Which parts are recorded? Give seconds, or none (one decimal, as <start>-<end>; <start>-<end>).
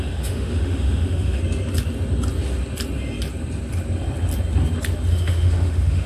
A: 1.4-5.1